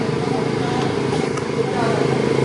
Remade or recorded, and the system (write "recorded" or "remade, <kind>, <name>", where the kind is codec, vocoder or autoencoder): recorded